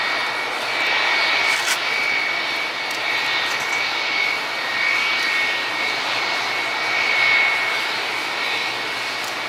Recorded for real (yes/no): yes